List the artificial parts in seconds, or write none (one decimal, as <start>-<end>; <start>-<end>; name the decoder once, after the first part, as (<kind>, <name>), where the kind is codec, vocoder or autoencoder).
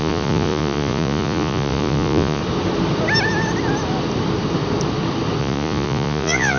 0.0-2.4 (vocoder, Vocos); 5.4-6.6